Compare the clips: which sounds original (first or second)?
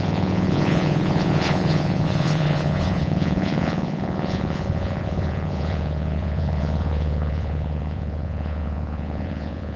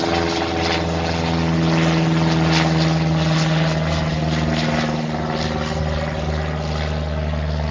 second